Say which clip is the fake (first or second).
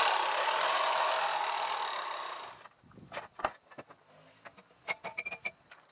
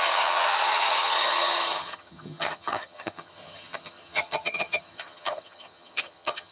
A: second